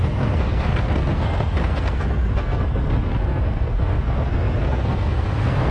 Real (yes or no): no